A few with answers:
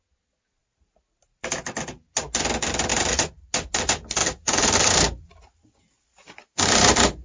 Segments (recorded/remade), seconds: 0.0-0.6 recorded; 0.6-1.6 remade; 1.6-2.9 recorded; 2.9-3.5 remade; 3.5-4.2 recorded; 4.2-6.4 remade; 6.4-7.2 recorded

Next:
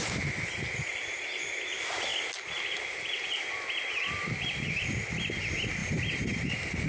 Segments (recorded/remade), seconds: 0.0-5.8 recorded; 5.8-6.9 remade

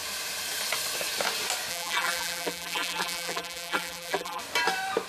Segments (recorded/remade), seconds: 0.0-1.7 recorded; 1.7-4.4 remade; 4.4-5.1 recorded

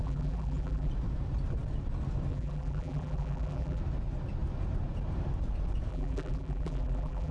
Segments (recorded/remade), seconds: 0.0-0.9 remade; 0.9-2.3 recorded; 2.3-3.8 remade; 3.8-5.9 recorded; 5.9-7.3 remade

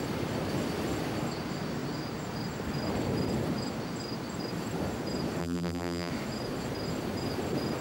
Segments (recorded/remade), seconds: 0.0-5.4 recorded; 5.4-6.1 remade; 6.1-7.8 recorded

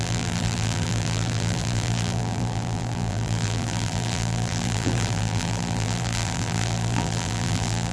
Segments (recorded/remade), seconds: 0.0-7.9 remade

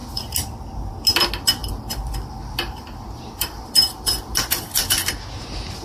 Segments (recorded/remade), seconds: 0.0-0.9 remade; 0.9-1.6 recorded; 1.6-5.1 remade; 5.1-5.8 recorded